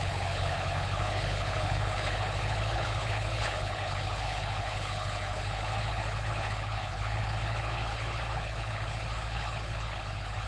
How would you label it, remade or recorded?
remade